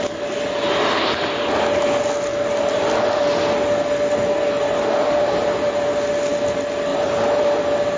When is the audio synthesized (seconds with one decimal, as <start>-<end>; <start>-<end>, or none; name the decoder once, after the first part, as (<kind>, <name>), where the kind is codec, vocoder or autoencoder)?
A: 5.0-5.8 (vocoder, BigVGAN v2); 6.9-7.6